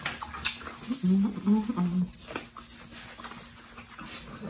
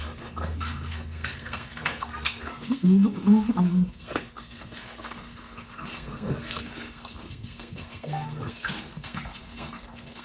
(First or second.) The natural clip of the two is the first